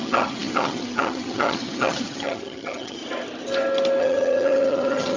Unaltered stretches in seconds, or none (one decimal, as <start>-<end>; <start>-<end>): 3.0-4.0